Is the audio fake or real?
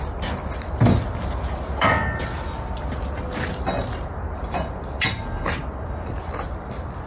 real